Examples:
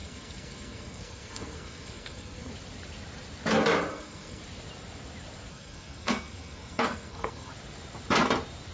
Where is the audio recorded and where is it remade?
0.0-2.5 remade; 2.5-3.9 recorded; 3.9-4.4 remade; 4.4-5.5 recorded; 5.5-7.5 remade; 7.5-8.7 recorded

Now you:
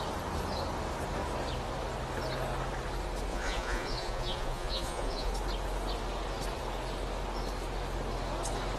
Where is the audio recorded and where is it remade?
0.0-3.3 recorded; 3.3-5.3 remade; 5.3-8.8 recorded